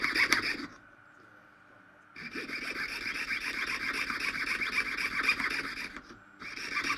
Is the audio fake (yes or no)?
no